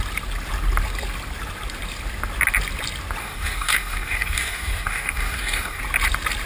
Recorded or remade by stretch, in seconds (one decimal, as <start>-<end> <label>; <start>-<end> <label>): 0.0-3.2 recorded; 3.2-5.8 remade; 5.8-6.5 recorded